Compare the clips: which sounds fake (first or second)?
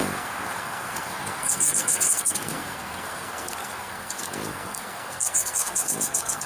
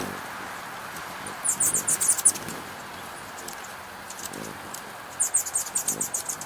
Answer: first